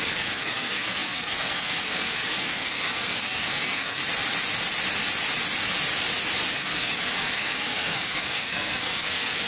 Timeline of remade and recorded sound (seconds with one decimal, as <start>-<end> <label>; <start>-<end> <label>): 0.0-4.0 remade; 4.0-6.5 recorded; 6.5-9.5 remade